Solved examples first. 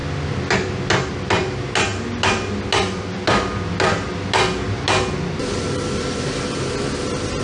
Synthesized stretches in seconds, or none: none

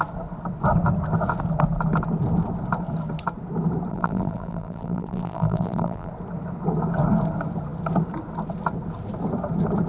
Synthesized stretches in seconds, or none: 3.9-6.1 (vocoder, BigVGAN v2)

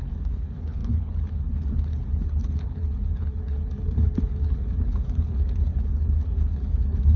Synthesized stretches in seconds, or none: 0.0-7.2 (codec, HILCodec)

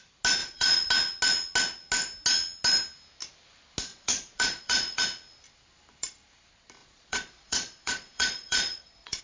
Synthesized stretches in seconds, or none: 0.4-0.9 (vocoder, Vocos); 3.9-5.0; 6.8-9.2

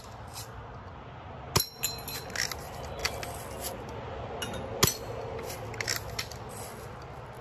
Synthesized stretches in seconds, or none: none

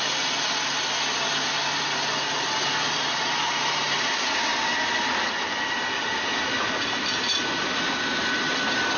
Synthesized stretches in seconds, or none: none